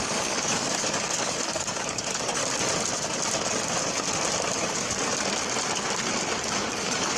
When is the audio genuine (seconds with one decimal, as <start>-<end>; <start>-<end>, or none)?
2.4-6.6

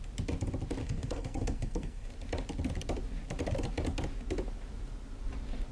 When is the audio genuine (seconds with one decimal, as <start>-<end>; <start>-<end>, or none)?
0.0-0.8; 2.1-5.7

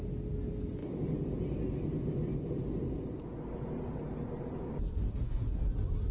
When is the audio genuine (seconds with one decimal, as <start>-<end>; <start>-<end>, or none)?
0.0-5.0; 5.6-6.1

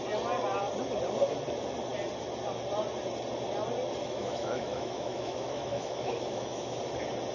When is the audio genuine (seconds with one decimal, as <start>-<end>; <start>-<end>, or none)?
0.0-4.0; 6.8-7.3

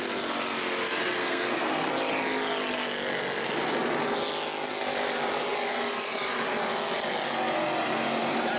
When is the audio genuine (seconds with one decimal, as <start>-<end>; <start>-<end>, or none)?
0.0-1.2; 1.9-8.6

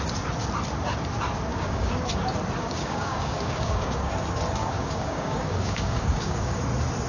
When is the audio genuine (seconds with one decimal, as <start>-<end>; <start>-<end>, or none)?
0.0-1.5; 2.1-2.6; 4.1-4.6; 6.6-7.1

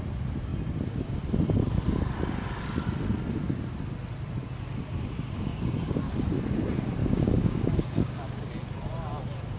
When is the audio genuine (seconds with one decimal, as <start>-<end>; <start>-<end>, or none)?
0.0-5.5; 6.0-7.0; 8.5-9.6